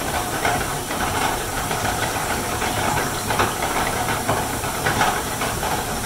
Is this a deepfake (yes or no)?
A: yes